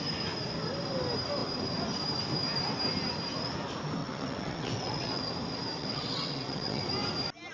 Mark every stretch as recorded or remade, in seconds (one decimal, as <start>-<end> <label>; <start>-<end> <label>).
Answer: 0.0-4.0 recorded; 4.0-5.2 remade; 5.2-5.8 recorded; 5.8-6.8 remade; 6.8-7.5 recorded